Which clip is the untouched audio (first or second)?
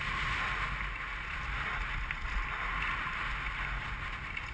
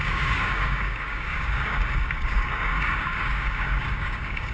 first